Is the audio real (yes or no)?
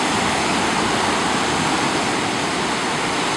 yes